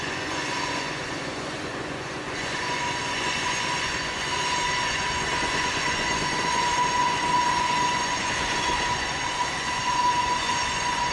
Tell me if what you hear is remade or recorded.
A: remade